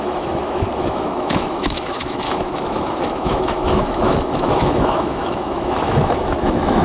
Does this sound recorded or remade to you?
remade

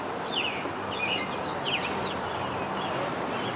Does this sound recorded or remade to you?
recorded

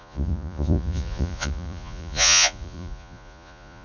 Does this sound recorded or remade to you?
remade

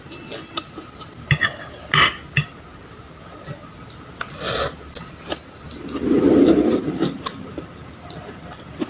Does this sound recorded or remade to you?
recorded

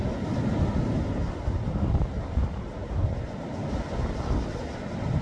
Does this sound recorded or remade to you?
recorded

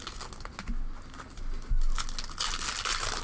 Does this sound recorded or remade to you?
recorded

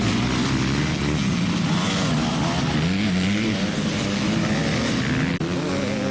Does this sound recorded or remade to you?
recorded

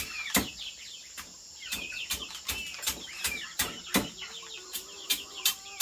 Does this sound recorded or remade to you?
recorded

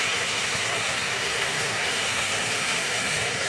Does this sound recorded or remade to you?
remade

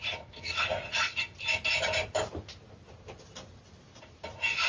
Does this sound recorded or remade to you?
recorded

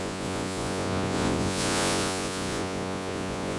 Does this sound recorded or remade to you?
remade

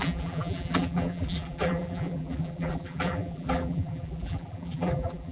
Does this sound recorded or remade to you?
remade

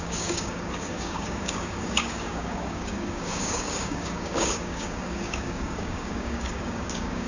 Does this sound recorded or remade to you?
remade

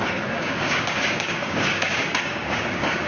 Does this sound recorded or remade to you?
remade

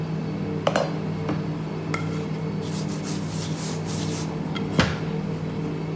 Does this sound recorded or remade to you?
recorded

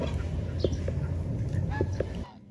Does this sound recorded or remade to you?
recorded